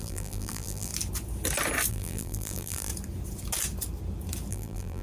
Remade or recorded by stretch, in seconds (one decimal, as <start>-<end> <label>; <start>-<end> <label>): 0.0-0.9 remade; 0.9-1.9 recorded; 1.9-2.9 remade; 2.9-4.5 recorded; 4.5-5.0 remade